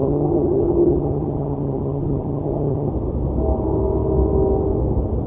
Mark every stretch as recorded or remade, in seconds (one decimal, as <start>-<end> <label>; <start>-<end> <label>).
0.0-2.9 remade; 2.9-5.3 recorded